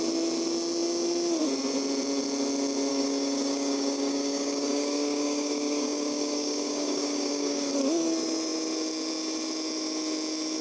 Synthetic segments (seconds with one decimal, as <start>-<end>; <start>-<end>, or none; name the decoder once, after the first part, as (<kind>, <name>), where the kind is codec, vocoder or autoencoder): 2.9-7.7 (codec, DAC)